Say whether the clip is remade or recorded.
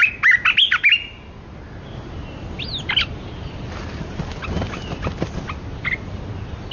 recorded